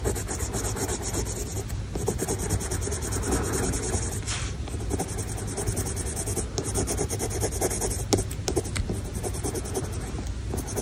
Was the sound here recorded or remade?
recorded